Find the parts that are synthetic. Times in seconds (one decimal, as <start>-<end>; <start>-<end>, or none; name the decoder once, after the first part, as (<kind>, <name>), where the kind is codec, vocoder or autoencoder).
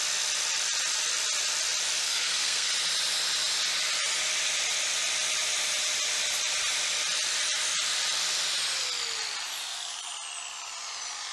2.0-2.7 (codec, SNAC)